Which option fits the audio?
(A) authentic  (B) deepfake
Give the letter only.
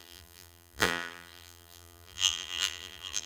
B